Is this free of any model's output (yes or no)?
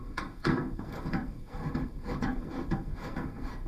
no